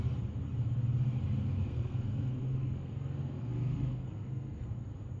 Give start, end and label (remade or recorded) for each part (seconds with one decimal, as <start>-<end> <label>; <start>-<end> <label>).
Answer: 0.0-1.7 recorded; 1.7-4.8 remade; 4.8-5.2 recorded